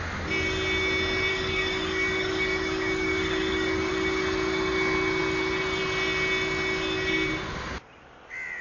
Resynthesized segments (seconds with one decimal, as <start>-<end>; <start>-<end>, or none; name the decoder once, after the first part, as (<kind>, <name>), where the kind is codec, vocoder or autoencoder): 1.3-3.9 (codec, DAC)